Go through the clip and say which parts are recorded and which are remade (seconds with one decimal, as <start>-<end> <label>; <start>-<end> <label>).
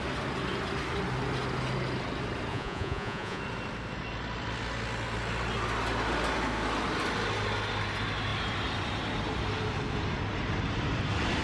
0.0-2.5 recorded; 2.5-3.4 remade; 3.4-11.4 recorded